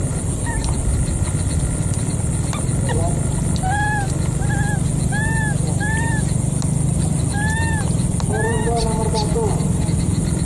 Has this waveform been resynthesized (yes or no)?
no